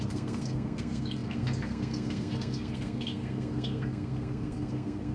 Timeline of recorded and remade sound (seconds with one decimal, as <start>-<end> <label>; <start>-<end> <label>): 0.0-5.1 remade